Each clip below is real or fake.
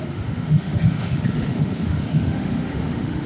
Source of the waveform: fake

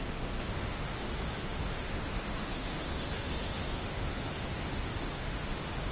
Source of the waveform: fake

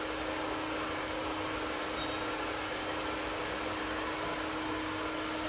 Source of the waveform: real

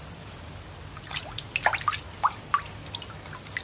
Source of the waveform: real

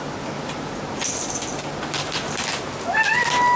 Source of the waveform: real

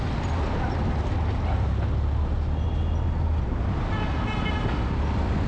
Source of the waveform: real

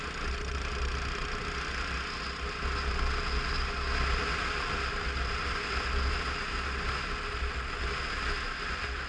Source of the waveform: real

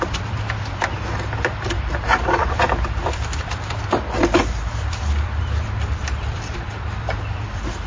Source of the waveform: fake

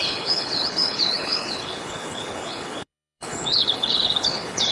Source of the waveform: fake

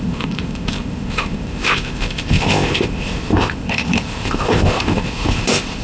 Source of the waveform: fake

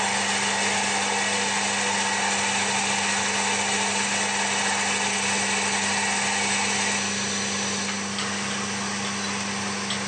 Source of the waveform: real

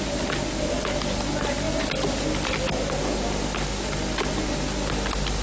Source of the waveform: real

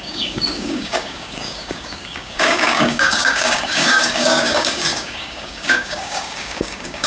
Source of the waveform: fake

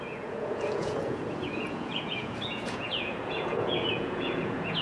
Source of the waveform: fake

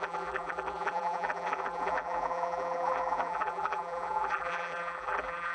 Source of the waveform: fake